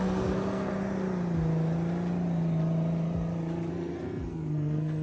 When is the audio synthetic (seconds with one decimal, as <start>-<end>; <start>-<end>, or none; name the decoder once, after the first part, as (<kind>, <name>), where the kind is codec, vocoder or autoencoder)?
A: 0.0-0.7 (codec, SNAC); 3.7-5.0